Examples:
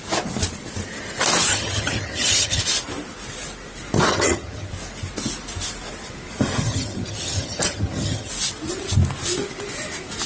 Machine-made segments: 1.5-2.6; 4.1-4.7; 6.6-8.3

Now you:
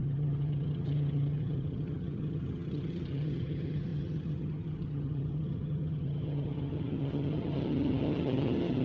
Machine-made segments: 0.0-8.8